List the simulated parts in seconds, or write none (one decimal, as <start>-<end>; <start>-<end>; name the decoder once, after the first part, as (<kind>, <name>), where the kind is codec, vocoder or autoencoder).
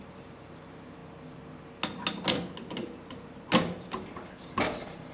none